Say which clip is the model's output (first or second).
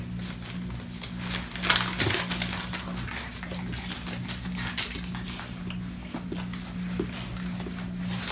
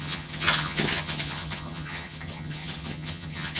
second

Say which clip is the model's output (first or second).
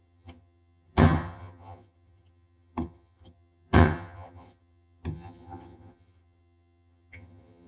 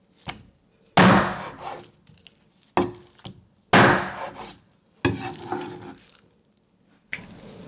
first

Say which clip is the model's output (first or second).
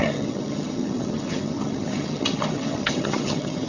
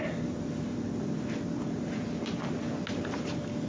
first